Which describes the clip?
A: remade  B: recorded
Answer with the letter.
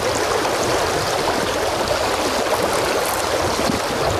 B